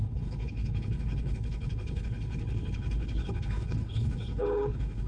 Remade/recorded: remade